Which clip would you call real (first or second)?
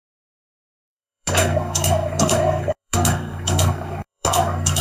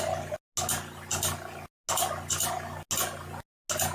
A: second